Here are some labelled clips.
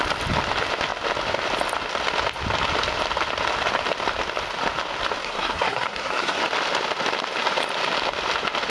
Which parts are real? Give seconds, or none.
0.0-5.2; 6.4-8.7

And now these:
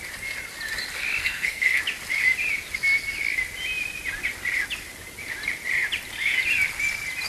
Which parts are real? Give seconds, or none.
0.0-1.2; 1.8-7.3

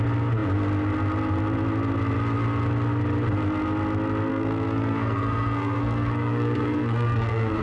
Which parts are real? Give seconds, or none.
0.0-4.3

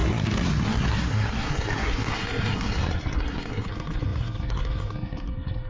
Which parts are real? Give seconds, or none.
none

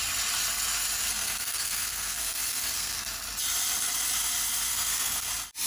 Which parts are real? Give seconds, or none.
0.0-1.1; 3.1-4.7; 5.3-5.7

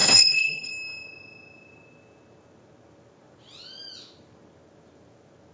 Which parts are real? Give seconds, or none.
0.7-5.5